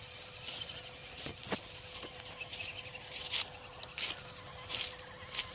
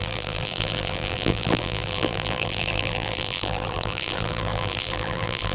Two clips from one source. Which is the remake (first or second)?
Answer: second